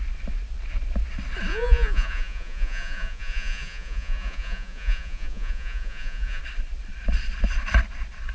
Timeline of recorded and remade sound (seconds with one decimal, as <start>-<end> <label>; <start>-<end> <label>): 0.0-1.5 recorded; 1.5-6.4 remade; 6.4-8.3 recorded